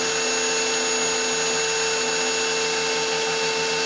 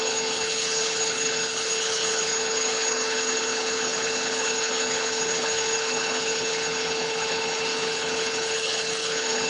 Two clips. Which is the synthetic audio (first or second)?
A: second